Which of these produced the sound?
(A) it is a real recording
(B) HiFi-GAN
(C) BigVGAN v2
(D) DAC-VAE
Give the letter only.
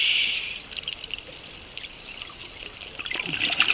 A